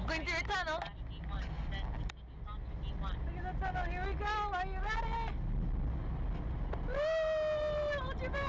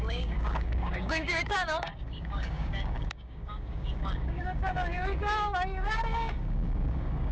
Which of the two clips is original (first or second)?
first